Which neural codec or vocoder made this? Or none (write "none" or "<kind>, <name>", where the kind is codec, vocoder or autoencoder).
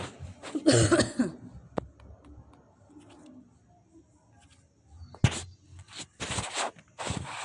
none